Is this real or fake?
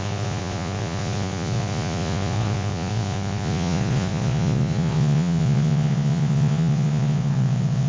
fake